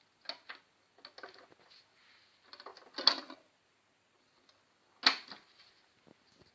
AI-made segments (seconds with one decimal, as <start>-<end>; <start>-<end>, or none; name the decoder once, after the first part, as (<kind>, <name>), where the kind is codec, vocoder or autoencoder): none

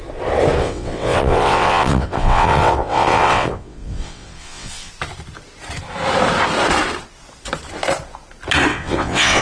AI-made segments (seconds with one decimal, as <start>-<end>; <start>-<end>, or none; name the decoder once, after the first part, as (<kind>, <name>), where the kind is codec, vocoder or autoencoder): 0.6-4.9 (vocoder, WaveNeXt); 8.7-9.4

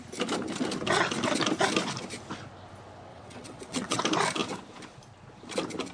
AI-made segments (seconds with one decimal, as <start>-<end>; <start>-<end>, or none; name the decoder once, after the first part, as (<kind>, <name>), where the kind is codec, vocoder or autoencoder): 3.1-4.0 (vocoder, WaveNeXt)

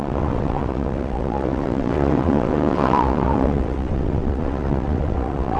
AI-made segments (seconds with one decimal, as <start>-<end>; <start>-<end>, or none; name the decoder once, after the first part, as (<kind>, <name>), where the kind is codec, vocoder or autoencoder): 0.0-5.6 (vocoder, WaveNeXt)

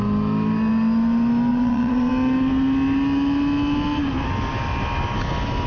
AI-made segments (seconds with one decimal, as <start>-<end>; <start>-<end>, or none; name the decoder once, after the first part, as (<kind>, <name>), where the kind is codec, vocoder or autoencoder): 1.5-2.1 (vocoder, WaveNeXt)

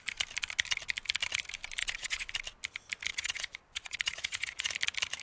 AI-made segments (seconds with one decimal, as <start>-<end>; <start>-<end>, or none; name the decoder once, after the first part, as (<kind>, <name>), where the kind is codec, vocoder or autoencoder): 1.8-2.3 (vocoder, WaveNeXt); 3.1-4.7

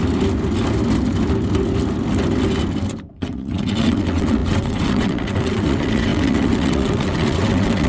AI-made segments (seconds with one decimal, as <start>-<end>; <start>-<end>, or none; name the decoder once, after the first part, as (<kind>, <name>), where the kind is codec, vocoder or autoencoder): 3.1-7.9 (vocoder, WaveNeXt)

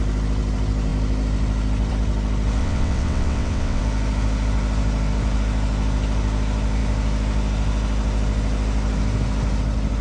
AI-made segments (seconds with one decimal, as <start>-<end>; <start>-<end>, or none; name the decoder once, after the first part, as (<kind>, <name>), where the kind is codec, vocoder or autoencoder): 2.6-3.8 (vocoder, WaveNeXt)